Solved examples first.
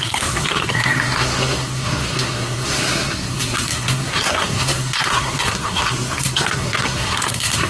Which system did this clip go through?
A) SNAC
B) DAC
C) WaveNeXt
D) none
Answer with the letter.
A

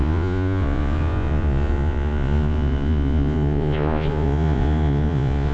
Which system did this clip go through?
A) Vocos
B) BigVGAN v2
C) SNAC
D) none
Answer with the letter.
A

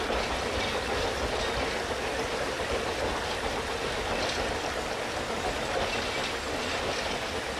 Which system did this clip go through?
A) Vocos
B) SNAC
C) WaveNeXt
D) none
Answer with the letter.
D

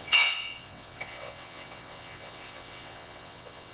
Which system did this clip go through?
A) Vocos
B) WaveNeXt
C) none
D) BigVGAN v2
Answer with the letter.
B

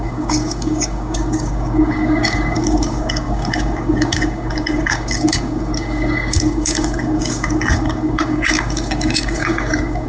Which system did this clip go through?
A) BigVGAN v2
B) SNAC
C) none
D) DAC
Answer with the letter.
D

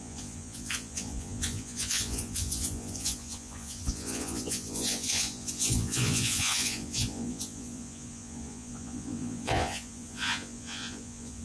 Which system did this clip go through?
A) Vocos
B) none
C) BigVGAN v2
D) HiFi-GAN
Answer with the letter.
A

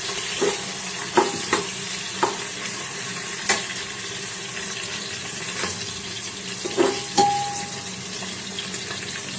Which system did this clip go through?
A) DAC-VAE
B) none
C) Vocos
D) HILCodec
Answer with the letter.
B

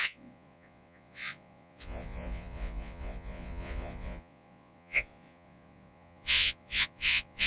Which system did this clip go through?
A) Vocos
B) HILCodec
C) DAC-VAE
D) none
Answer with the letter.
A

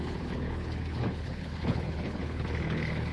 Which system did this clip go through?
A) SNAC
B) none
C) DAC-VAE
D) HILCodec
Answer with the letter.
D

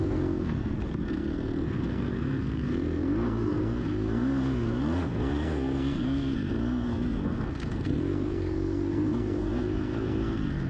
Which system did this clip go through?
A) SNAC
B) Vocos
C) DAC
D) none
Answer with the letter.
A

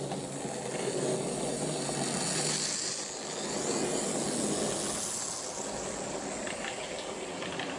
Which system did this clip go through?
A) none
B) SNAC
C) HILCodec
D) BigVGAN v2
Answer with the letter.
A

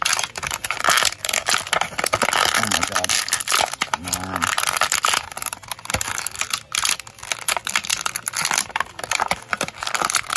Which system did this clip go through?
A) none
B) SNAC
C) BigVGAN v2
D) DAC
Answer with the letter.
A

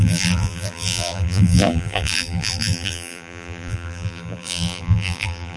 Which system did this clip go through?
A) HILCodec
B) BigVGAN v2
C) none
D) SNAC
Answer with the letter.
B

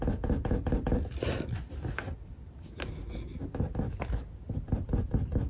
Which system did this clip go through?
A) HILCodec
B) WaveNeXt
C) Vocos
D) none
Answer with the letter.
D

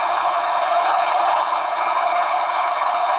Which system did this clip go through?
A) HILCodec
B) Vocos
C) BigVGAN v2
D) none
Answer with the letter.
A